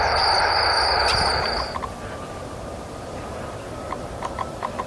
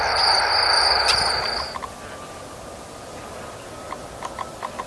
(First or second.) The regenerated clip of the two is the first